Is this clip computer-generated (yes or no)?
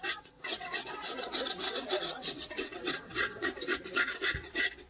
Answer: yes